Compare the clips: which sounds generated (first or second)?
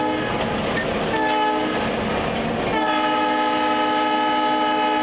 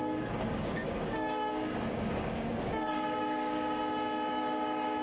second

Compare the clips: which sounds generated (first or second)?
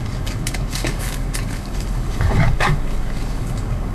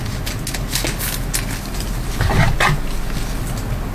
first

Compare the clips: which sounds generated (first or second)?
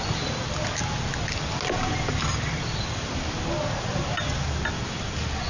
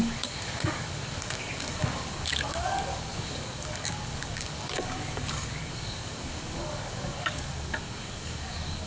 second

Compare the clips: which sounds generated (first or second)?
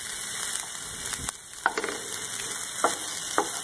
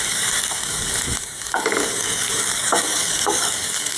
second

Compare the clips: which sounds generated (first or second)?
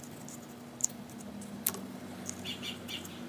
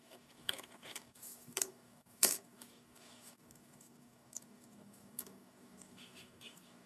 second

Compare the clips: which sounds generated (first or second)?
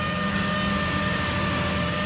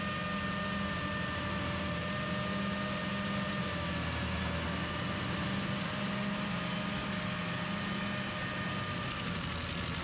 first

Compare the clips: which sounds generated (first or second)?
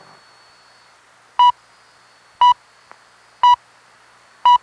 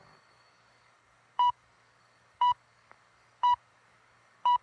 second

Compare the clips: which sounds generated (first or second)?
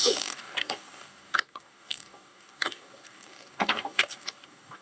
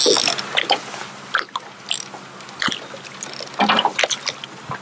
first